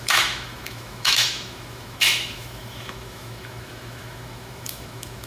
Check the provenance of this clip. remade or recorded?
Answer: remade